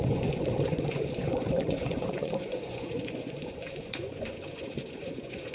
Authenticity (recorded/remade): remade